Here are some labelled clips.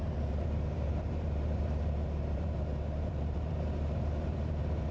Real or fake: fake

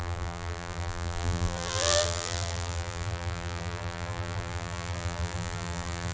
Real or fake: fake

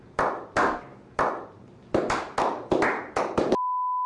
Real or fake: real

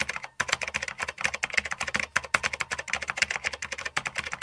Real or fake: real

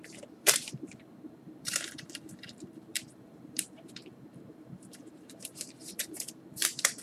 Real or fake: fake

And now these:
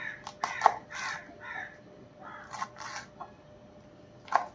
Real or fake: real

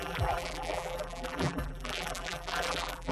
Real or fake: fake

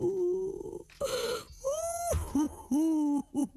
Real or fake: real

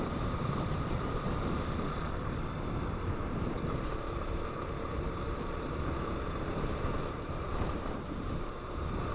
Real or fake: fake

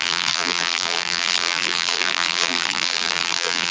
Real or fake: fake